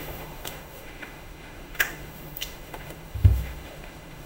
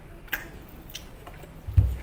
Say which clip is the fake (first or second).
first